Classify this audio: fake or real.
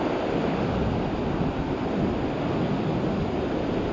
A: real